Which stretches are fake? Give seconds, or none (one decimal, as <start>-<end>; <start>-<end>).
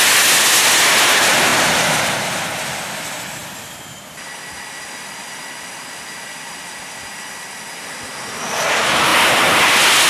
none